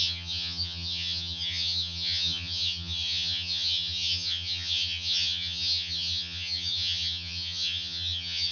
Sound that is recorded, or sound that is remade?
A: remade